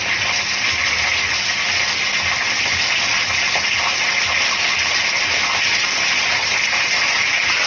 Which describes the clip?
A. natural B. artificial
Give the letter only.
A